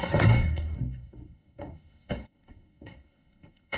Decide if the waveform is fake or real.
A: fake